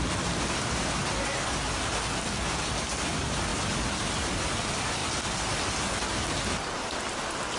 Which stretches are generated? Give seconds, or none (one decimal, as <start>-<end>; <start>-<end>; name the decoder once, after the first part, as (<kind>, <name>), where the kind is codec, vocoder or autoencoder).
none